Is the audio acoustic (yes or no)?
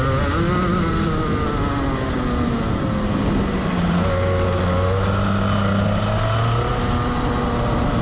yes